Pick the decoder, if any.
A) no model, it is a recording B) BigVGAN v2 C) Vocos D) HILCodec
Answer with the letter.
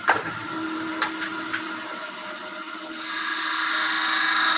B